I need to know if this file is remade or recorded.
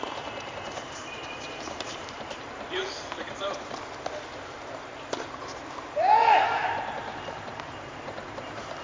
remade